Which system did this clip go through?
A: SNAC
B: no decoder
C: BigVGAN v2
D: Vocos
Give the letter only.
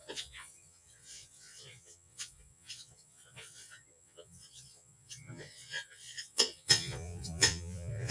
D